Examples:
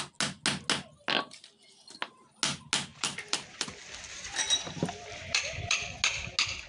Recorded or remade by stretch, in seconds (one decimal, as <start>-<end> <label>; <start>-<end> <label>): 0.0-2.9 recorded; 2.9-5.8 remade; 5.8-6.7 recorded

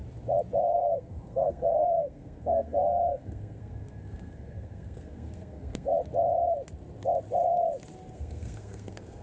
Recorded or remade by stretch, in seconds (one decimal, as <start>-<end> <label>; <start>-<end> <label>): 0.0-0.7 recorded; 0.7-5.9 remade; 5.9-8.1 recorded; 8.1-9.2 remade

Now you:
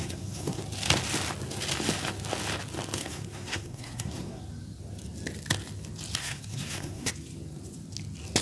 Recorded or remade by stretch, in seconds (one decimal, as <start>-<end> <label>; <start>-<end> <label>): 0.0-0.6 remade; 0.6-3.0 recorded; 3.0-4.4 remade; 4.4-6.2 recorded; 6.2-7.1 remade; 7.1-8.4 recorded

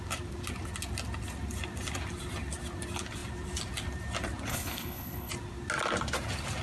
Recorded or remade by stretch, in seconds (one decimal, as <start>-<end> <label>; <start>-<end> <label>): 0.0-4.5 recorded; 4.5-5.3 remade; 5.3-6.6 recorded

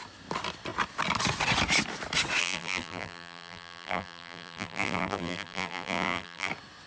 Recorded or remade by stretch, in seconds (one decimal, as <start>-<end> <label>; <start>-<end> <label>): 0.0-2.4 recorded; 2.4-6.5 remade; 6.5-6.9 recorded